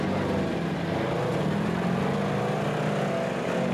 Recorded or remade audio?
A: recorded